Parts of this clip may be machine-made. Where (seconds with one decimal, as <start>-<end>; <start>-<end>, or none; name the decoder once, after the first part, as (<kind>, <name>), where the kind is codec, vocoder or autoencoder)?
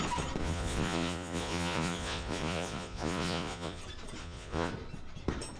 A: 0.4-3.8 (vocoder, Vocos); 4.2-4.7